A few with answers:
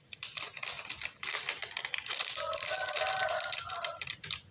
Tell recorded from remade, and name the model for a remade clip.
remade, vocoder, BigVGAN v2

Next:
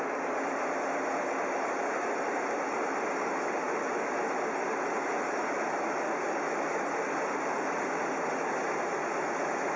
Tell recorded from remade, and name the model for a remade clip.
recorded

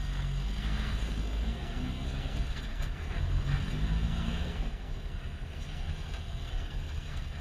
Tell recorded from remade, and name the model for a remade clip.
remade, codec, SNAC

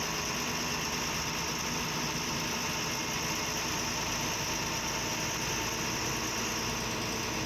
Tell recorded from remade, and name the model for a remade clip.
recorded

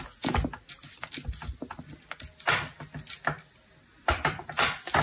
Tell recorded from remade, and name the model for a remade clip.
recorded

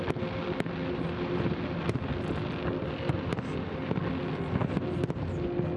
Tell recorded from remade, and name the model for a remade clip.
recorded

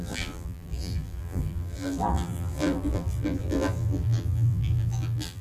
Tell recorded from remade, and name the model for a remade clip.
remade, vocoder, BigVGAN v2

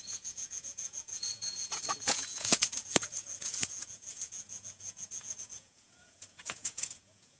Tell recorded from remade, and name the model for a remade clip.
remade, vocoder, Vocos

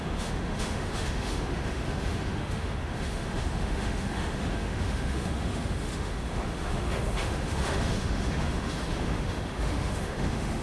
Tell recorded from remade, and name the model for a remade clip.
remade, autoencoder, DAC-VAE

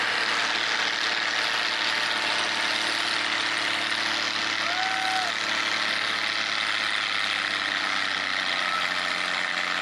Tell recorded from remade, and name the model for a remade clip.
recorded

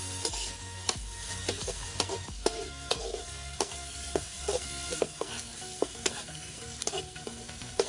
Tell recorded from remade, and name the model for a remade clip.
remade, codec, SNAC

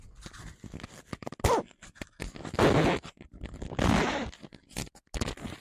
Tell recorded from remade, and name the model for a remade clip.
recorded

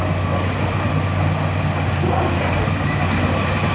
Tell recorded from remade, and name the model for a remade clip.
recorded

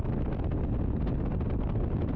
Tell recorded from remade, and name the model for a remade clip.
recorded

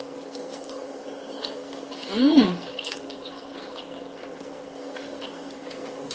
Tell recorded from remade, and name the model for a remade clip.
remade, codec, SNAC